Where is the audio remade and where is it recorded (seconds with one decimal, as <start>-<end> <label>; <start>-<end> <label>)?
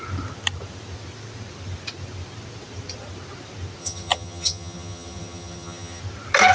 0.0-3.8 recorded; 3.8-6.0 remade; 6.0-6.5 recorded